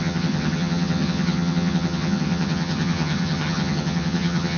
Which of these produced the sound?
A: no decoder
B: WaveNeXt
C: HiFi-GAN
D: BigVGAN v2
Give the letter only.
C